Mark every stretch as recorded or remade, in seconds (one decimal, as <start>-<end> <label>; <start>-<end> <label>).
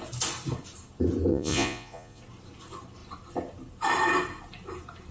0.0-1.3 recorded; 1.3-2.2 remade; 2.2-5.1 recorded